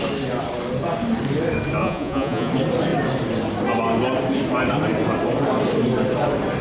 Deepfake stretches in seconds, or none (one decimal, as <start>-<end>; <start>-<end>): 1.8-2.5